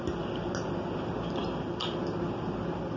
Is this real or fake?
real